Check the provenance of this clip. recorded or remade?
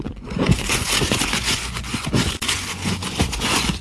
remade